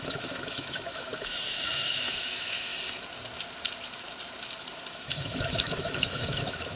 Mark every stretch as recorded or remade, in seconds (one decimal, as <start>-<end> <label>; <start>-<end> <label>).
0.0-2.7 remade; 2.7-4.9 recorded; 4.9-6.8 remade